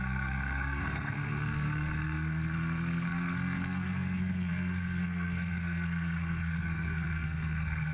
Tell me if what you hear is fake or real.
fake